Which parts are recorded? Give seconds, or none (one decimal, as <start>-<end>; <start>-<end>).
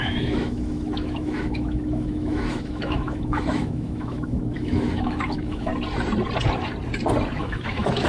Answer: 5.7-7.4